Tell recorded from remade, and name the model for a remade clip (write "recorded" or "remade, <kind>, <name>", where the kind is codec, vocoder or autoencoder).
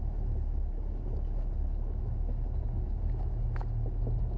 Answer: recorded